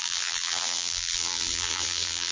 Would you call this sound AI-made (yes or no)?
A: yes